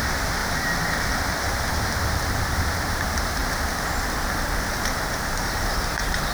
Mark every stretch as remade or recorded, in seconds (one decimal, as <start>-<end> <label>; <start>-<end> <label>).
0.0-0.4 remade; 0.4-1.7 recorded; 1.7-3.4 remade; 3.4-4.7 recorded; 4.7-6.3 remade